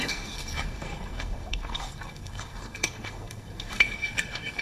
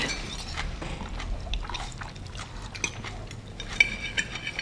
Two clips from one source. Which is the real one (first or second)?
second